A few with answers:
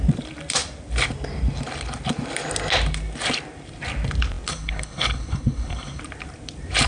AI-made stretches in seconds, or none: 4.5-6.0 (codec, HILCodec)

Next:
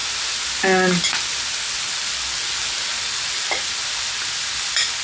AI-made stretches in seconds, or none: none